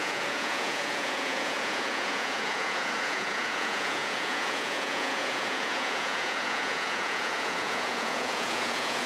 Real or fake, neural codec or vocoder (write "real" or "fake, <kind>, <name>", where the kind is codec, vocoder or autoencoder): fake, vocoder, Vocos